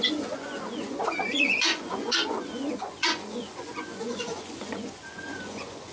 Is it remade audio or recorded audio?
remade